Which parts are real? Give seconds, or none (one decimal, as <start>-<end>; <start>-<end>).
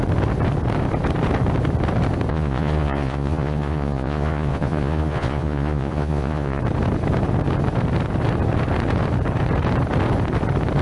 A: 0.0-2.3; 6.6-10.8